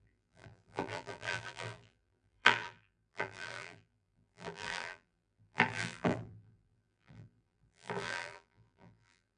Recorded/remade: remade